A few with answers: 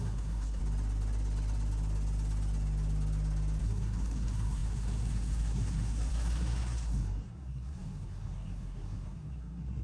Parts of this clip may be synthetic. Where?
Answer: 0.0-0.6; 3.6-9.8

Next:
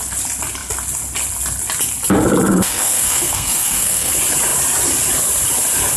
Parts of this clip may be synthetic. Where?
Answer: 2.5-4.1

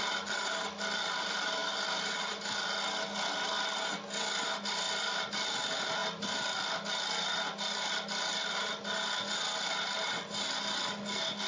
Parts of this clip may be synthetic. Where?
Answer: none

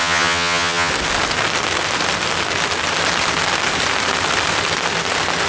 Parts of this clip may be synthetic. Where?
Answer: 0.0-0.9